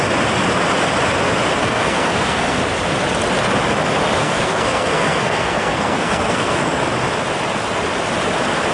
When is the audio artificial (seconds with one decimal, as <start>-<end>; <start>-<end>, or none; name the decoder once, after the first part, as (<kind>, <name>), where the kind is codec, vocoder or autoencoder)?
1.6-2.6 (codec, SNAC); 4.2-6.8

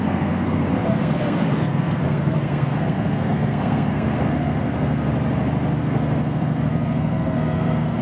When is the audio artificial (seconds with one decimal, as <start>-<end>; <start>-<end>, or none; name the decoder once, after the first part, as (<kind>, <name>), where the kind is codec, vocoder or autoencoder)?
0.0-5.1 (codec, SNAC); 5.8-8.0